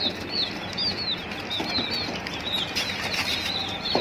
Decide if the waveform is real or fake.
real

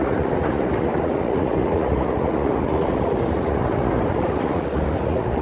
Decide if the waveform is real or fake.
fake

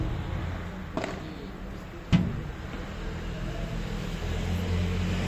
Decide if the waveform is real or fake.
real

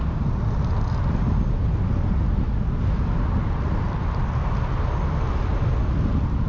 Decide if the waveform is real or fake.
real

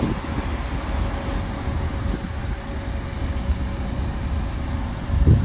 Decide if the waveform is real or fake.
real